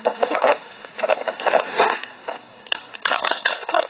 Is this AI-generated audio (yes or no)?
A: yes